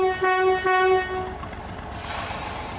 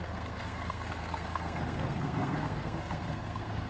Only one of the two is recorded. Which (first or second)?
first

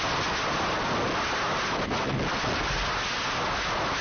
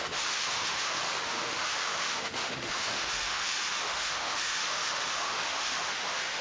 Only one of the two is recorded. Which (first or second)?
first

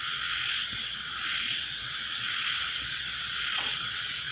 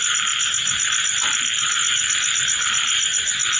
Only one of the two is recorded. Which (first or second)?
second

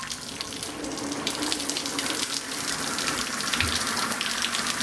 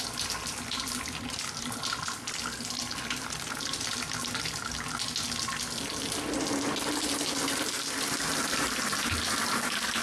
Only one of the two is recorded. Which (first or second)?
second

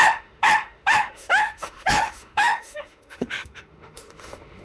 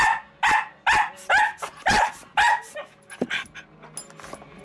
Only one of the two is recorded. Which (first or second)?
second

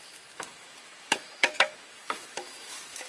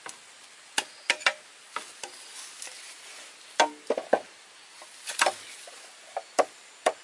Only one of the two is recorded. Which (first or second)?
second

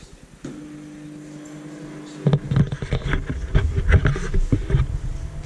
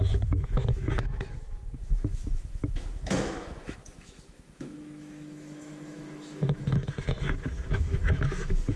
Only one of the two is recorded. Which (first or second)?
first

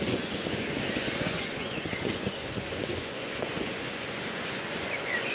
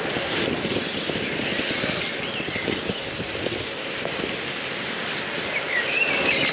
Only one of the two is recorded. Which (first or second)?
second